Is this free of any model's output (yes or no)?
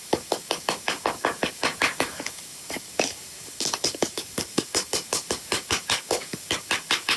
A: no